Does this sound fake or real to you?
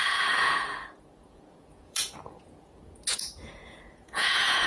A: fake